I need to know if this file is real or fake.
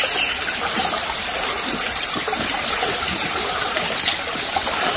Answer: real